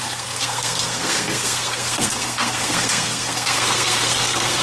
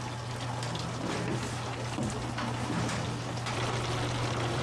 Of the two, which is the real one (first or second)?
second